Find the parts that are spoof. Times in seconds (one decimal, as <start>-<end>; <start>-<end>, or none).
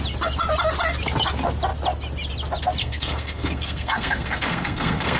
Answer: 2.8-5.2